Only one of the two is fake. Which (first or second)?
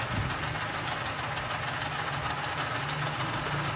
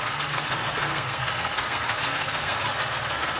second